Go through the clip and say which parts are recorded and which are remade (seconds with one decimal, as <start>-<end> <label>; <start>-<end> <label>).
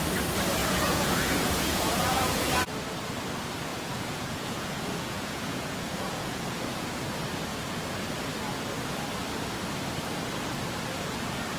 0.0-0.6 recorded; 0.6-2.5 remade; 2.5-3.7 recorded; 3.7-6.9 remade; 6.9-11.6 recorded